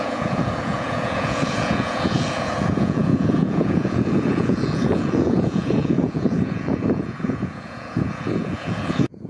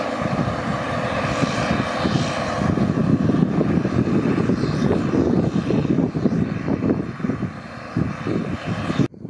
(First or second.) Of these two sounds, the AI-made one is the first